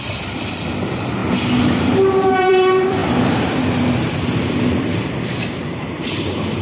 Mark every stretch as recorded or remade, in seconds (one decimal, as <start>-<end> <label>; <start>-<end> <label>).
0.0-1.2 remade; 1.2-2.4 recorded; 2.4-6.6 remade

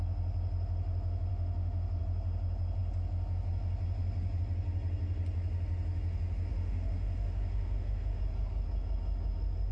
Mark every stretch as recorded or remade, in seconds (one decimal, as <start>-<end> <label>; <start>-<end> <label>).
0.0-1.3 recorded; 1.3-2.0 remade; 2.0-6.5 recorded; 6.5-8.2 remade; 8.2-9.7 recorded